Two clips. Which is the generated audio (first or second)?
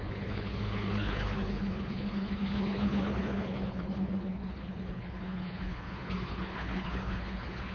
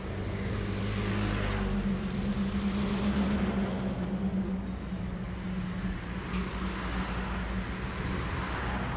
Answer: first